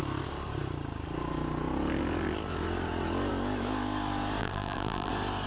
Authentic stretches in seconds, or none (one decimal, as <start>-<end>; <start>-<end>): 0.0-4.4; 5.1-5.5